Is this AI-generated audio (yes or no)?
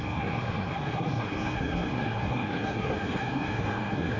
yes